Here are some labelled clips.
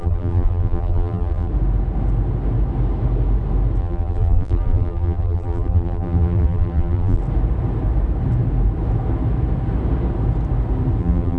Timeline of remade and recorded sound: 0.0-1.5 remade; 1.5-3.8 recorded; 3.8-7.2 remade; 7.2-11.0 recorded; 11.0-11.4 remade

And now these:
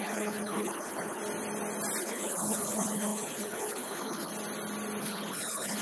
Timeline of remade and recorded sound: 0.0-1.2 remade; 1.2-2.0 recorded; 2.0-4.3 remade; 4.3-5.0 recorded; 5.0-5.8 remade